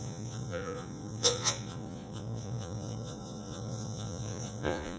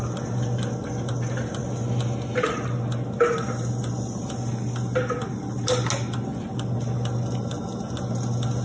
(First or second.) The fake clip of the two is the first